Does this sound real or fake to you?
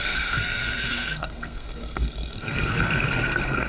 fake